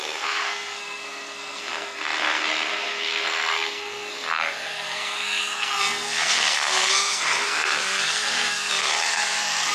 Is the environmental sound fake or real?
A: fake